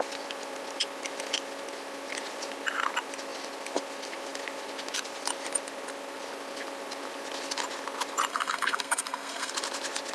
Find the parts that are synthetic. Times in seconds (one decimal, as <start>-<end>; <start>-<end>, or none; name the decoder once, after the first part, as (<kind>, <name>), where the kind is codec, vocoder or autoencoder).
8.3-9.5 (codec, SNAC)